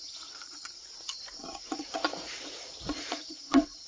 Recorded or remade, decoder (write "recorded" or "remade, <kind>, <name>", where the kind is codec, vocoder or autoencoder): remade, vocoder, Vocos